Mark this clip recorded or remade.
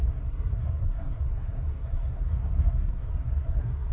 remade